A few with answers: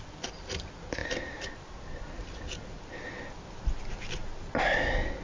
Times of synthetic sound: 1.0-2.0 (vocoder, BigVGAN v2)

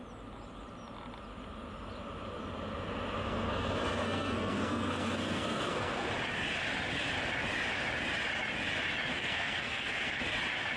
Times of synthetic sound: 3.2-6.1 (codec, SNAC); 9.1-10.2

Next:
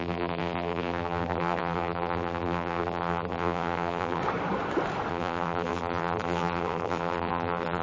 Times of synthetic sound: 0.0-4.2 (vocoder, BigVGAN v2); 5.1-7.8

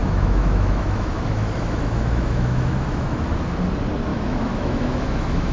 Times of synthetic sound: 0.0-3.3 (autoencoder, DAC-VAE); 4.1-5.5

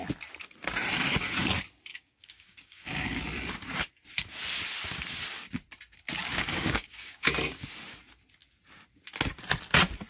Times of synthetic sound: 1.9-3.2 (codec, DAC); 6.3-7.3

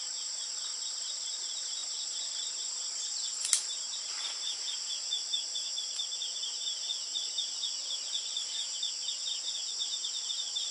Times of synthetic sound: none